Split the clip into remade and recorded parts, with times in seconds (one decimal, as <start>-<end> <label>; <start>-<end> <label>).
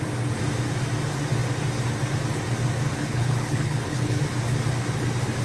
0.0-3.0 recorded; 3.0-4.2 remade; 4.2-5.4 recorded